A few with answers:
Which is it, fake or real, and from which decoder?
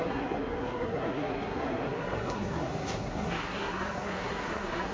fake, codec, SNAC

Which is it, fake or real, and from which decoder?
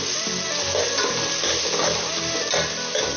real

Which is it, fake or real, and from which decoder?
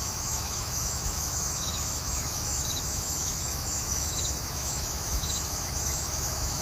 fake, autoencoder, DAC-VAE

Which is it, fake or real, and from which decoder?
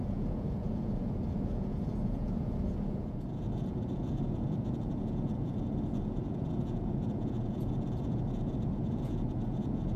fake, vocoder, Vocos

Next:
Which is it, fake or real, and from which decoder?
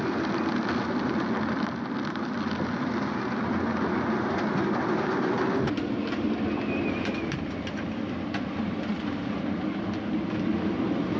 real